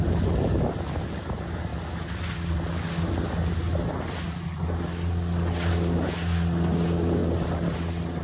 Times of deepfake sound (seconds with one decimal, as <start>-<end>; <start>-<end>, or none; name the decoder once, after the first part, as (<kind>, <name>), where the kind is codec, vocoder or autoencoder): none